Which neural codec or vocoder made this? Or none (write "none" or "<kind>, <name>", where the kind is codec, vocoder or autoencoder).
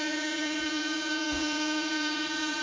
vocoder, Vocos